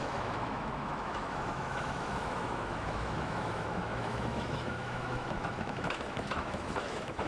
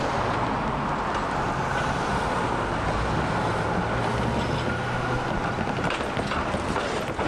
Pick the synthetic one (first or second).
first